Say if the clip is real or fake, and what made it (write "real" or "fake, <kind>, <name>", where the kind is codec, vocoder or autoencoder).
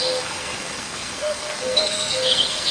fake, codec, SNAC